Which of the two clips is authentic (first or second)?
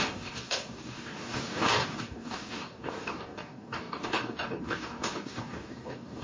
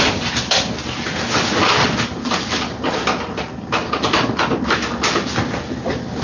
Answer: second